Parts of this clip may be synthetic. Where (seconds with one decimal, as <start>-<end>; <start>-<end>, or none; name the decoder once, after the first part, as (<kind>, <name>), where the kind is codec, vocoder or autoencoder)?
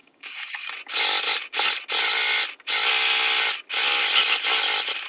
0.0-0.7 (codec, DAC)